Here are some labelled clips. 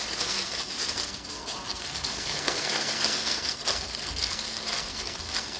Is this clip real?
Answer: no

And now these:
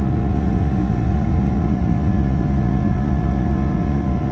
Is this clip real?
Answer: no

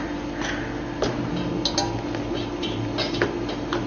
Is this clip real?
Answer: yes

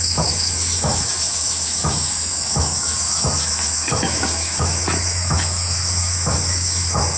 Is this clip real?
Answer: no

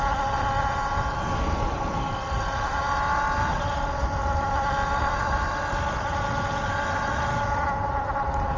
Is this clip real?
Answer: yes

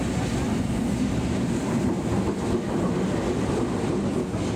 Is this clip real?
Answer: yes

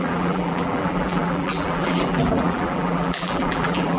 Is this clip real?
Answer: no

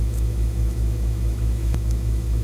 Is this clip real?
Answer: no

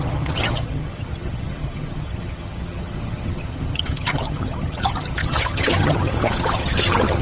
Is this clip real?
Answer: no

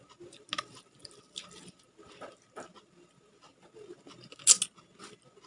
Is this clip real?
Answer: yes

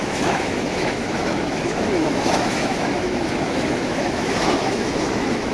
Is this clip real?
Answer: no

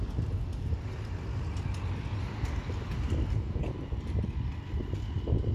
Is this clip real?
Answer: yes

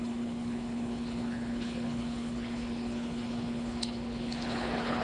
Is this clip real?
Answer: no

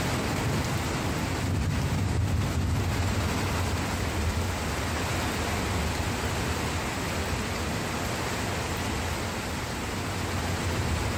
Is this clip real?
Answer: yes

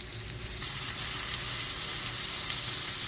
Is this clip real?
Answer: yes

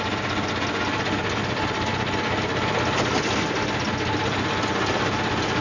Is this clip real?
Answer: yes